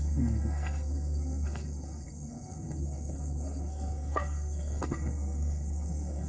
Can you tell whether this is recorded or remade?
remade